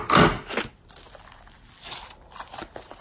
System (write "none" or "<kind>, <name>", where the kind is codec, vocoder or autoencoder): none